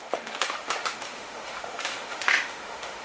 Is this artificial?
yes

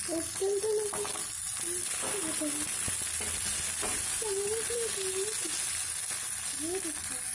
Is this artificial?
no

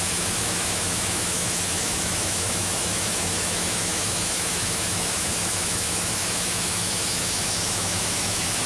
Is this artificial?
yes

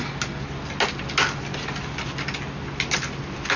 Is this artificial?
no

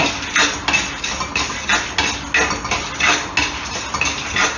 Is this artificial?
no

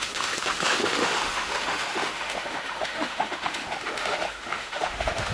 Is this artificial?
yes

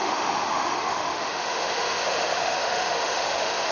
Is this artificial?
yes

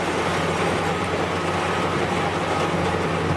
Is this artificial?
no